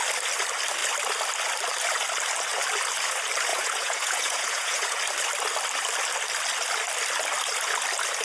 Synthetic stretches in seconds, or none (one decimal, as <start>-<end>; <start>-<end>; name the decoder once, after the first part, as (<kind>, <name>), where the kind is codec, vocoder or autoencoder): 3.5-5.0 (vocoder, Vocos)